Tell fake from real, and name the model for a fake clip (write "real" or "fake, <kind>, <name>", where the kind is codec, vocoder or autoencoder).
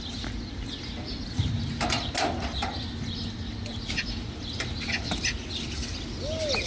real